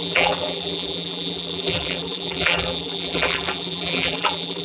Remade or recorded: remade